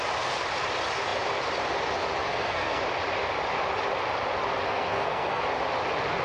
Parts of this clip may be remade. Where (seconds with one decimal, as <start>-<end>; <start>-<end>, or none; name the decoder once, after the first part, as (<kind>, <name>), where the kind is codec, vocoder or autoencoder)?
2.2-2.8 (codec, SNAC); 4.7-5.4